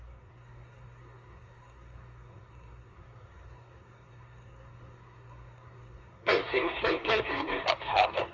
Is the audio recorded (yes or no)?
no